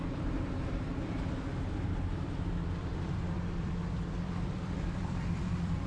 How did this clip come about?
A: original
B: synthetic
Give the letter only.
B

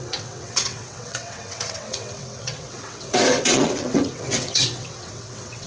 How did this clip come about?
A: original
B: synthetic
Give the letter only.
B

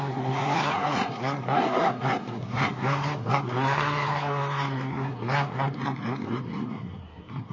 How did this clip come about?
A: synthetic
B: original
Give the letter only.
A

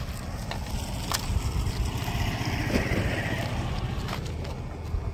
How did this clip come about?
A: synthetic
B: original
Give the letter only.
B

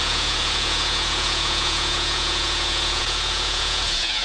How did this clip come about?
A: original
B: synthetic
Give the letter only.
B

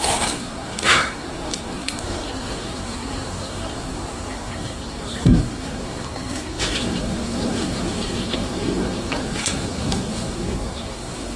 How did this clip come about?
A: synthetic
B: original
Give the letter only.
A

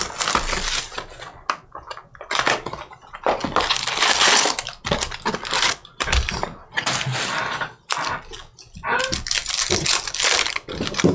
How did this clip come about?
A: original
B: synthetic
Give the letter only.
A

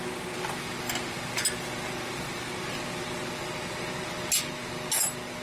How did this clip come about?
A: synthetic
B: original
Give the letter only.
B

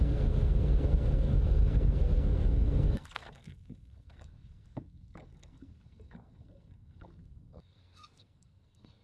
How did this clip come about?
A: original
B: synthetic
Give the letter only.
B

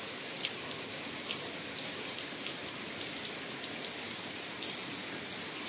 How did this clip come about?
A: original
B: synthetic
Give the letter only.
A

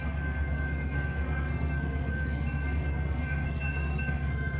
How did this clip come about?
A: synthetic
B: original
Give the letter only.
A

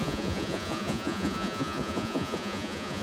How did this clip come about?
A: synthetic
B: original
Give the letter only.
A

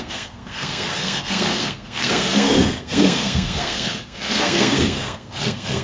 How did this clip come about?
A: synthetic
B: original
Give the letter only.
A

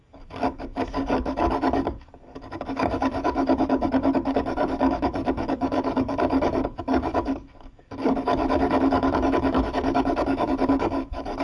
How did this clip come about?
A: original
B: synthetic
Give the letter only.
B